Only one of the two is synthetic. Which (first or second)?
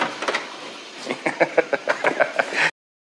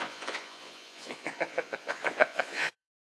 second